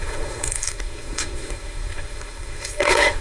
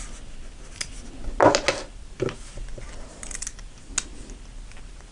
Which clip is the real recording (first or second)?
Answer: second